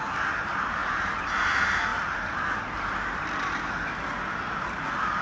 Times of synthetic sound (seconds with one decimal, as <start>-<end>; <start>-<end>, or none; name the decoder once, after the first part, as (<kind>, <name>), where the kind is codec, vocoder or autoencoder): 0.8-1.5 (vocoder, BigVGAN v2)